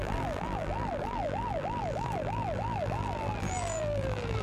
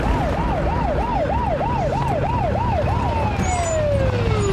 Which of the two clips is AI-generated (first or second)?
first